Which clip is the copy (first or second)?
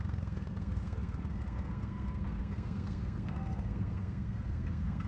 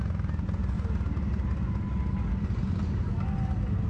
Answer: first